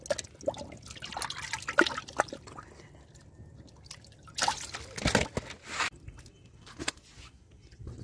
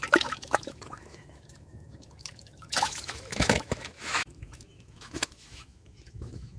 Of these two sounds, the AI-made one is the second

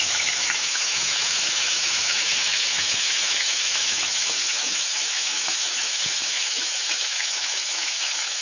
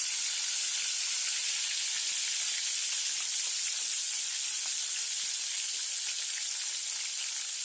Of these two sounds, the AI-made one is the first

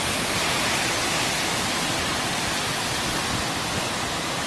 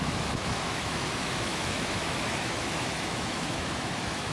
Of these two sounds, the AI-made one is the second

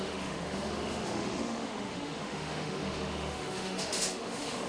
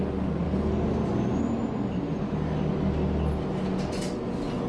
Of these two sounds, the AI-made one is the first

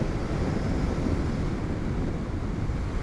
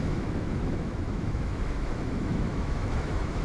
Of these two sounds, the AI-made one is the second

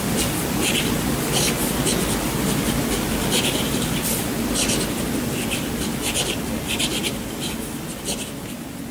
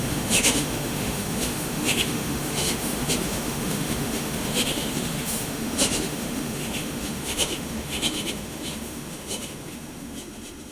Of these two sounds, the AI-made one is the second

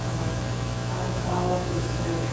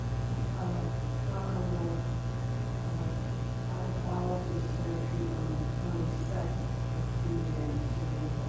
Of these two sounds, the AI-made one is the first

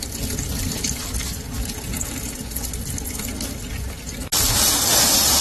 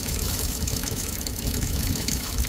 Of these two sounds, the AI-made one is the second